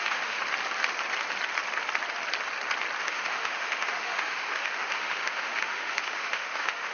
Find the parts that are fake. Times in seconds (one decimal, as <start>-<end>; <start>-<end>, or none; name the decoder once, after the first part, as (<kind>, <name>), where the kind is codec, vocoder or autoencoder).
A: 0.0-0.4 (autoencoder, DAC-VAE); 3.0-6.9